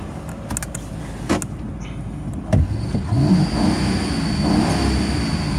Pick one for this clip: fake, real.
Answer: real